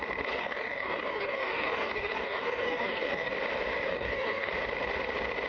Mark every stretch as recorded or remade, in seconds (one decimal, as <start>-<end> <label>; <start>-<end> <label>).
0.0-0.4 recorded; 0.4-3.3 remade; 3.3-3.9 recorded; 3.9-4.5 remade; 4.5-5.5 recorded